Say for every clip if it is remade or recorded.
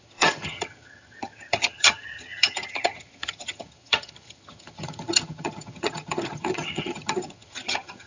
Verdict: remade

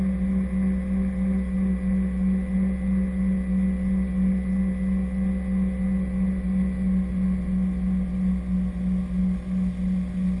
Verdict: recorded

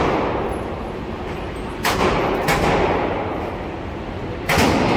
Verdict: recorded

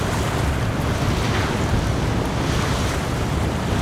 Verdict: recorded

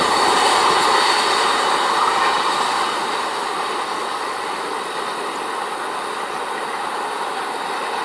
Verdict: recorded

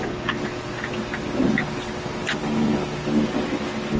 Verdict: recorded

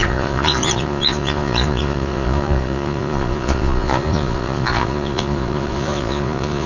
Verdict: remade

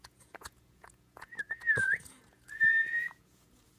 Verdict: remade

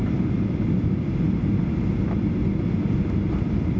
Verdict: recorded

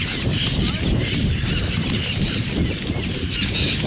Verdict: remade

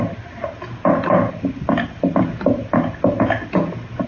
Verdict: recorded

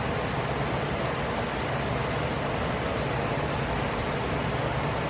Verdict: recorded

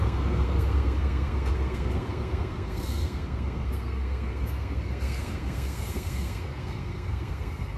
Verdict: remade